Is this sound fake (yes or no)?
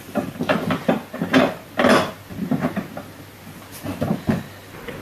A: no